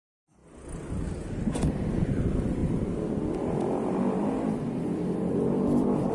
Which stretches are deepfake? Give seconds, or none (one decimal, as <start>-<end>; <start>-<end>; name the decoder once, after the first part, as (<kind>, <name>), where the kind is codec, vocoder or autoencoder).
0.0-0.4 (vocoder, BigVGAN v2); 1.8-6.1